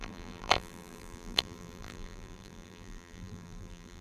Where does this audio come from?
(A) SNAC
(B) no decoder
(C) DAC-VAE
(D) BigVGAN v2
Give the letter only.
D